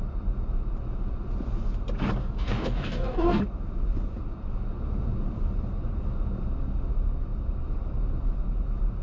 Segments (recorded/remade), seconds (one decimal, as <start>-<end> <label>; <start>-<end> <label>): 0.0-2.2 recorded; 2.2-3.4 remade; 3.4-9.0 recorded